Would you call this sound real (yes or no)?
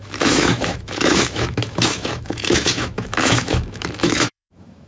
no